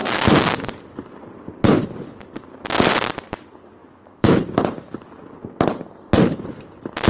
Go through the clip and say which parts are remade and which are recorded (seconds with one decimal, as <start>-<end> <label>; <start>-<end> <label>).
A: 0.0-3.8 recorded; 3.8-4.4 remade; 4.4-7.1 recorded